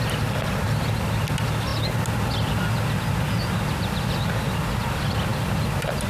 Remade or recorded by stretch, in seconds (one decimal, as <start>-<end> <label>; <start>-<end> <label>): 0.0-6.1 recorded